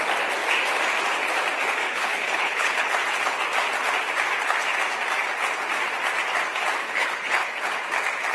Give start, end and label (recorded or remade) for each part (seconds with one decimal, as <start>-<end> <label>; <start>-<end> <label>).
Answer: 0.0-1.8 recorded; 1.8-2.9 remade; 2.9-6.8 recorded; 6.8-7.8 remade; 7.8-8.3 recorded